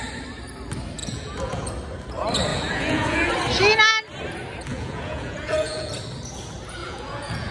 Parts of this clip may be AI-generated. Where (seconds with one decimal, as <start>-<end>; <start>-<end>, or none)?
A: 1.0-1.7; 2.5-3.3; 4.7-5.9; 6.8-7.5